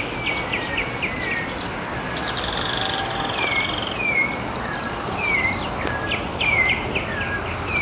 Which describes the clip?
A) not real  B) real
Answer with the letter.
A